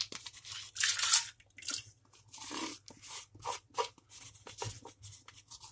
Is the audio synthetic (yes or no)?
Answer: no